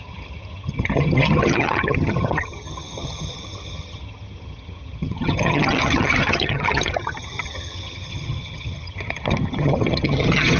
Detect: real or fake fake